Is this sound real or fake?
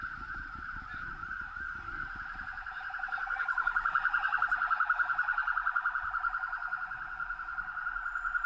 fake